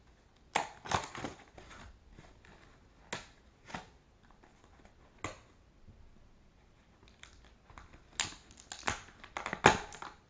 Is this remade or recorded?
recorded